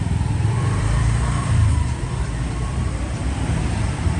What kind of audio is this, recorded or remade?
remade